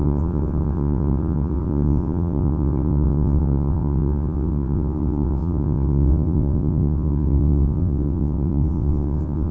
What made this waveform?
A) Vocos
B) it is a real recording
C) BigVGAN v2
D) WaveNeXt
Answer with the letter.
D